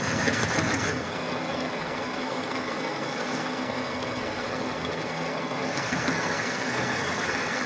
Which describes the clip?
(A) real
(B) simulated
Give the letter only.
B